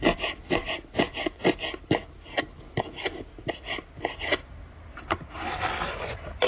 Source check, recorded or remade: recorded